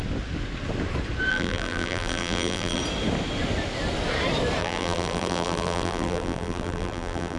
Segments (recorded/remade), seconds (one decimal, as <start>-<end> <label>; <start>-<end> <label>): 0.0-1.3 recorded; 1.3-2.8 remade; 2.8-4.6 recorded; 4.6-7.4 remade